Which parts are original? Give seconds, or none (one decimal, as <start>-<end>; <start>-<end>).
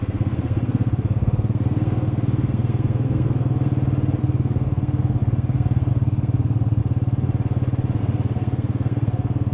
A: 3.7-4.2; 6.8-8.0